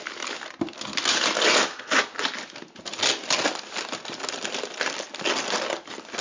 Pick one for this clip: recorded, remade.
recorded